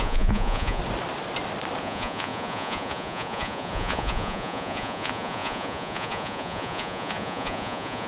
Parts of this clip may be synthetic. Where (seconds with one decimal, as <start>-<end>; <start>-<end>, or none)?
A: 0.0-0.8; 1.8-8.1